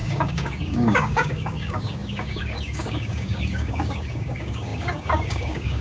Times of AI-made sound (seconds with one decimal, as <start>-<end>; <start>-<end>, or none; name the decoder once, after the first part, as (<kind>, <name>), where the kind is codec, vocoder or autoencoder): 0.0-5.8 (codec, DAC)